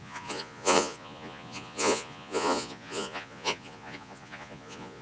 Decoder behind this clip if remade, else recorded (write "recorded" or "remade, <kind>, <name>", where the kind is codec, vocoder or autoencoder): remade, vocoder, Vocos